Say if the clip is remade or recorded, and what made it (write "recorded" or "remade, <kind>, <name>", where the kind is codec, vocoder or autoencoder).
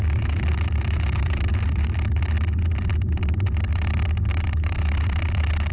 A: recorded